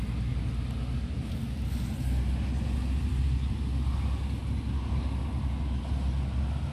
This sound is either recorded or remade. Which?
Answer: recorded